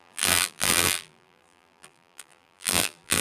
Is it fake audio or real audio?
fake